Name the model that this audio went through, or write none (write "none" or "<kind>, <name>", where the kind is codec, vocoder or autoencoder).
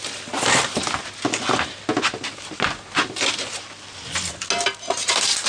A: none